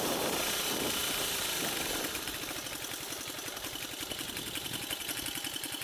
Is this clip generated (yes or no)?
no